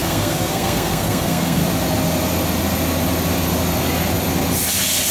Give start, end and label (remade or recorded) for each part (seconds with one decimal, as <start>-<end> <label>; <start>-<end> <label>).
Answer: 0.0-1.6 remade; 1.6-5.1 recorded